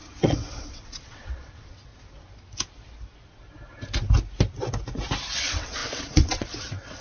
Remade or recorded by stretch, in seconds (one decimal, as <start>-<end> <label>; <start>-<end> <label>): 0.0-1.9 remade; 1.9-5.3 recorded; 5.3-7.0 remade